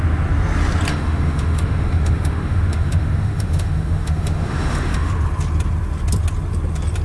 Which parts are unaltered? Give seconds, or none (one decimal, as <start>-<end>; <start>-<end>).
0.0-0.9; 5.1-7.0

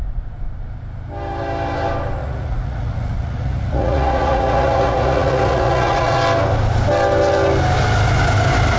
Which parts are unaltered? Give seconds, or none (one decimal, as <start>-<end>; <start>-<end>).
0.0-2.2; 6.2-8.8

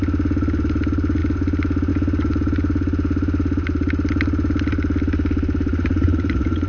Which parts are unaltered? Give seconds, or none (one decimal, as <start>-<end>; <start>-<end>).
0.0-5.7

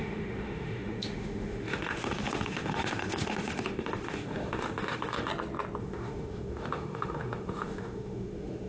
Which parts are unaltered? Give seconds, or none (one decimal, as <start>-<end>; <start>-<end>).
5.3-5.8

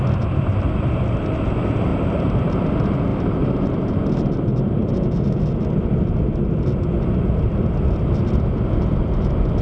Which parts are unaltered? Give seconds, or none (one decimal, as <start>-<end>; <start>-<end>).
0.0-1.9; 2.5-3.1; 4.0-9.6